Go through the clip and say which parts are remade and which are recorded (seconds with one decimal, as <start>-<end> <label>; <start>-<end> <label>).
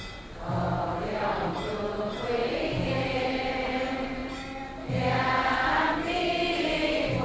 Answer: 0.0-7.2 recorded